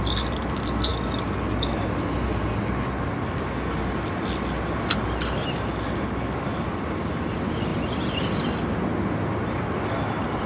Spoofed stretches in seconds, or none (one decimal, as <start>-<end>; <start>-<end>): none